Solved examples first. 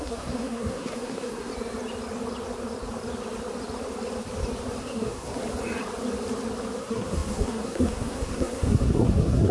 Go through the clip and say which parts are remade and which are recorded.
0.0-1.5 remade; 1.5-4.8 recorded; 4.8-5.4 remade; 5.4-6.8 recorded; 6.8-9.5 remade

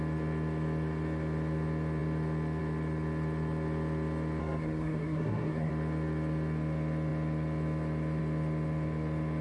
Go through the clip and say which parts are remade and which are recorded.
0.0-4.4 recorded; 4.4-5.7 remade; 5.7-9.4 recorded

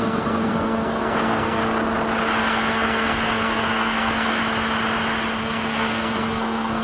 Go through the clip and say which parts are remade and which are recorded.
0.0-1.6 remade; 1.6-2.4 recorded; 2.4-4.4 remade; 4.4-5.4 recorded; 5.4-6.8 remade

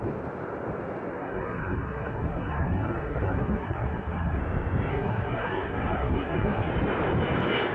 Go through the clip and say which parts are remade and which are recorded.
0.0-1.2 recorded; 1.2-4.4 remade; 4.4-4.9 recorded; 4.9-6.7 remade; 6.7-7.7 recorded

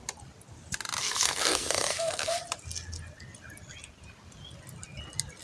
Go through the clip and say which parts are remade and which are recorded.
0.0-1.0 recorded; 1.0-2.3 remade; 2.3-5.4 recorded

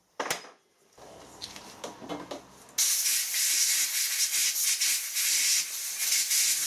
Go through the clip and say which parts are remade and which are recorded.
0.0-6.7 recorded

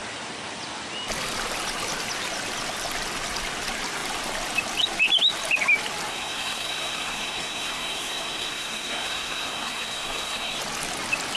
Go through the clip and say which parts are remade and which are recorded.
0.0-6.1 recorded; 6.1-10.6 remade; 10.6-11.4 recorded

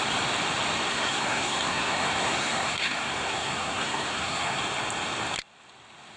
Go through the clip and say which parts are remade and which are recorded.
0.0-0.9 recorded; 0.9-4.6 remade; 4.6-6.2 recorded